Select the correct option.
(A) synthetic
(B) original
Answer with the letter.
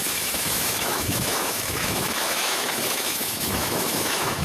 A